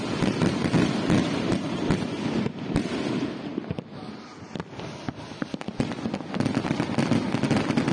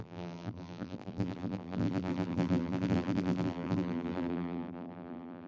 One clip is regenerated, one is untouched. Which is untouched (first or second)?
first